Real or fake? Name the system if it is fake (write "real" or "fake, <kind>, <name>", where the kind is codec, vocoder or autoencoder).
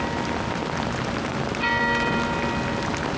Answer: real